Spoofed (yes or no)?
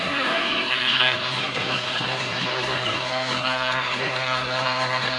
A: yes